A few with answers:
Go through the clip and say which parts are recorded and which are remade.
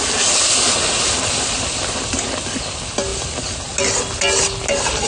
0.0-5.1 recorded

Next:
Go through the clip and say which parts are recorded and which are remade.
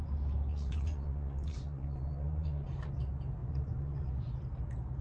0.0-0.5 recorded; 0.5-2.9 remade; 2.9-3.4 recorded; 3.4-4.1 remade; 4.1-5.0 recorded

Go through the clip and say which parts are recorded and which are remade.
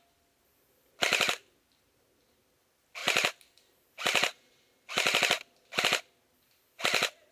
0.0-7.3 recorded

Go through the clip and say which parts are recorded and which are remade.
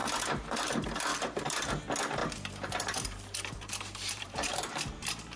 0.0-0.7 remade; 0.7-1.1 recorded; 1.1-1.8 remade; 1.8-2.2 recorded; 2.2-5.4 remade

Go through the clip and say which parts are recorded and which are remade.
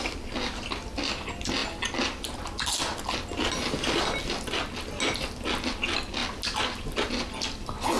0.0-8.0 recorded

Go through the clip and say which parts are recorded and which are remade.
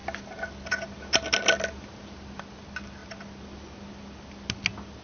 0.0-5.0 recorded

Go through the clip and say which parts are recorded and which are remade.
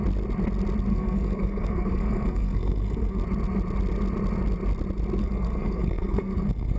0.0-0.9 recorded; 0.9-3.2 remade; 3.2-5.2 recorded; 5.2-6.8 remade